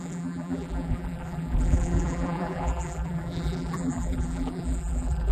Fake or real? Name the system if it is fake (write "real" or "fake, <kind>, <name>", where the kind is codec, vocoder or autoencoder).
fake, vocoder, BigVGAN v2